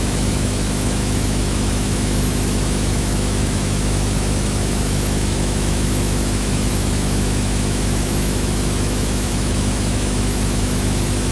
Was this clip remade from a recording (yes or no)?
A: yes